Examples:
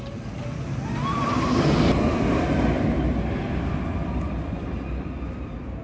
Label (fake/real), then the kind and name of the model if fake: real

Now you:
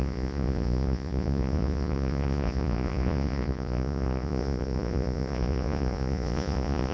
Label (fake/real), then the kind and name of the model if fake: fake, vocoder, Vocos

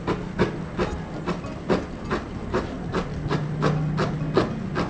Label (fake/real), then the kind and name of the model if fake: real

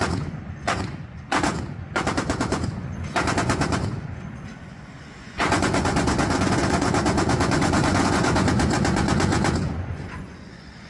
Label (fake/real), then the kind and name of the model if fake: fake, vocoder, Vocos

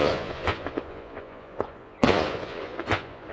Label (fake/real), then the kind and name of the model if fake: fake, vocoder, Vocos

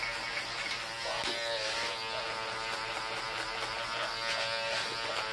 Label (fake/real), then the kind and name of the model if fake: real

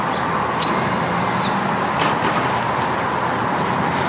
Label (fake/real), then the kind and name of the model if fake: real